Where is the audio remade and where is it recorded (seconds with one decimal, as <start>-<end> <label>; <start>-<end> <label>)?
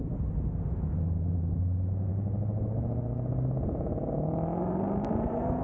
0.0-5.6 recorded